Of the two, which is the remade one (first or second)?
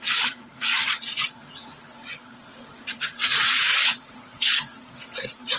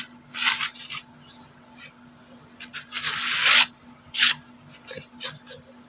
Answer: first